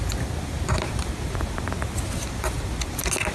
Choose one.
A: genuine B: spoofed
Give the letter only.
A